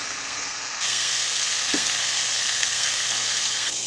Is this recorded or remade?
remade